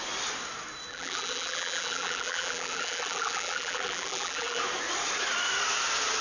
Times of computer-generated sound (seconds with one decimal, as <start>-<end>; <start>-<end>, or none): 0.9-4.6